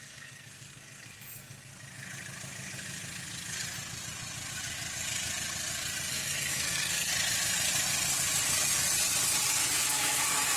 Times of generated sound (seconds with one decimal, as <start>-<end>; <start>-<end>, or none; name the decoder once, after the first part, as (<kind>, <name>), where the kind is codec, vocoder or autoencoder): 0.0-1.7 (codec, SNAC); 6.1-7.1; 9.5-10.6